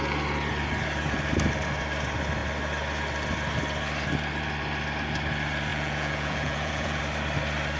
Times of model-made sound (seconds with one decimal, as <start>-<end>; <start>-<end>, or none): 5.7-7.0